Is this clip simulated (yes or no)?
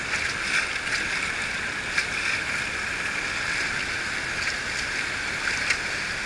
no